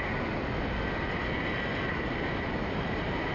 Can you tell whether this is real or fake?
real